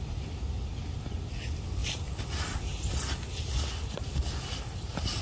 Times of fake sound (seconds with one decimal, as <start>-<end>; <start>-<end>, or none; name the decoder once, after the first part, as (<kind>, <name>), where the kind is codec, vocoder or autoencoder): none